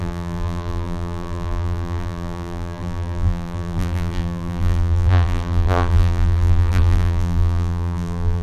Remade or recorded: remade